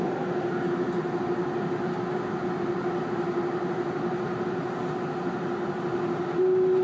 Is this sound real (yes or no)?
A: yes